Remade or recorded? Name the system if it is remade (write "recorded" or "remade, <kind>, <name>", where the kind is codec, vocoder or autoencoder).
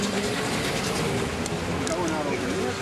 recorded